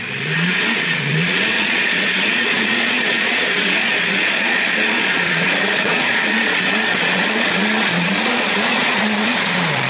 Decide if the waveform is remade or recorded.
remade